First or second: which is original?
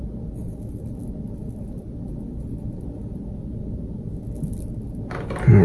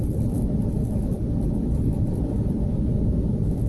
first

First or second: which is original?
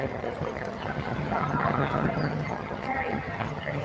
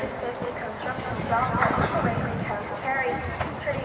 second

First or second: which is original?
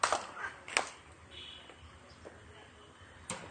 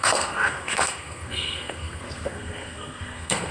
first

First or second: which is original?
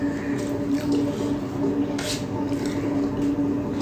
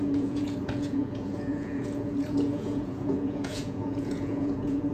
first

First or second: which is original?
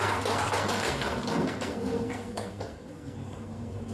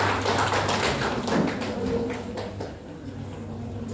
second